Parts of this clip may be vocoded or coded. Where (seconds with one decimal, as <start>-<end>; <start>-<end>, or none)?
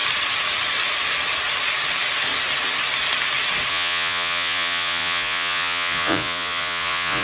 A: 3.7-7.2